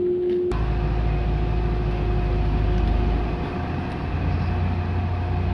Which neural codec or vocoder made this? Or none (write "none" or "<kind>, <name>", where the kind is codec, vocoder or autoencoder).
none